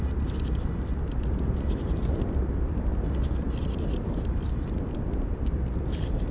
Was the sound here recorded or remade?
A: recorded